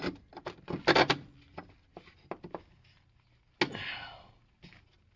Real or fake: real